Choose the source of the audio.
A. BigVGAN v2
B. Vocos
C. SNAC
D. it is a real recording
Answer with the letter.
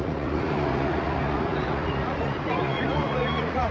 B